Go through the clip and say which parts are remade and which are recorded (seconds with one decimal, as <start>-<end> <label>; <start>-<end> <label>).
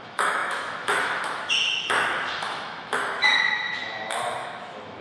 0.0-5.0 remade